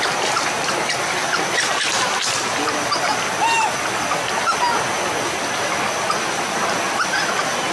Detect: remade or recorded recorded